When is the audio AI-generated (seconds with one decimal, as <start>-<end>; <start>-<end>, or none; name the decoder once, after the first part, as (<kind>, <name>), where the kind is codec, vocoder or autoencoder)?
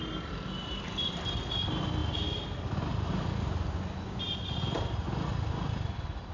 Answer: none